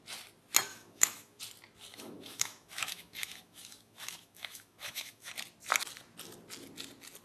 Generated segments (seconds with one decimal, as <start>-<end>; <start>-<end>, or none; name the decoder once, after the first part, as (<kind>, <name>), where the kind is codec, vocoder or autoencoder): 0.7-1.4 (autoencoder, DAC-VAE); 1.9-5.3